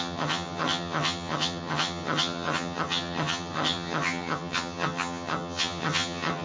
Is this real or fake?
fake